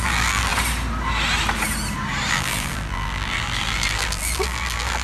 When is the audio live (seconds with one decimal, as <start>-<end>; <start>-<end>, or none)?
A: 0.5-2.3